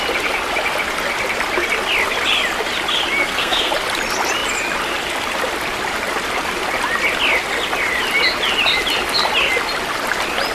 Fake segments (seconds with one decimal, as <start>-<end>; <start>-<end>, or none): 3.2-3.7